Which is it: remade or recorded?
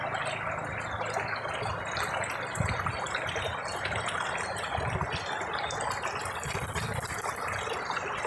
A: recorded